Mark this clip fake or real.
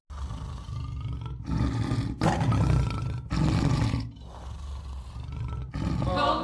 real